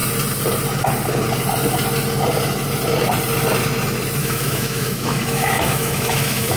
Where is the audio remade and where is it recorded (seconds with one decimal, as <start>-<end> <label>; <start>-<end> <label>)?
0.0-4.2 recorded; 4.2-6.6 remade